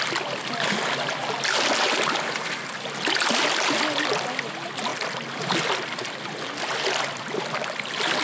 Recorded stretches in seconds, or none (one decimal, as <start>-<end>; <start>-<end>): 0.0-8.2